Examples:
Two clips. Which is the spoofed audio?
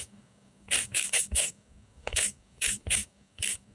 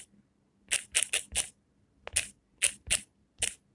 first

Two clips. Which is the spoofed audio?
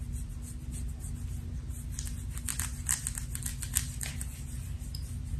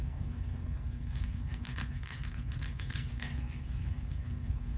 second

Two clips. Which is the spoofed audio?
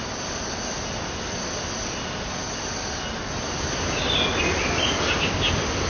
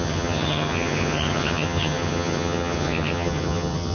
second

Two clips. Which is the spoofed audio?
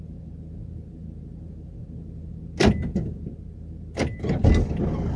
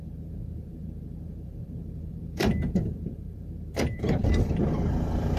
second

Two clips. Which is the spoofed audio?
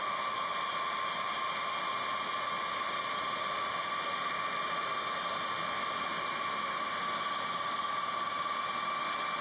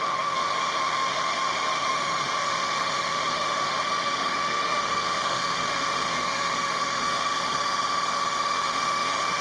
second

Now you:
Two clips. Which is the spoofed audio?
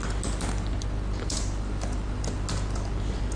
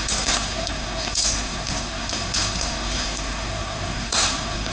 second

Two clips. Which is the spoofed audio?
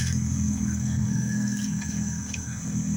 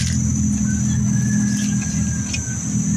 first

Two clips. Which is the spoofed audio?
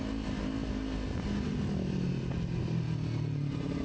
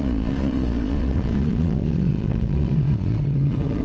second